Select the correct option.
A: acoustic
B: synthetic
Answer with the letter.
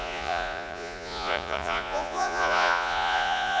B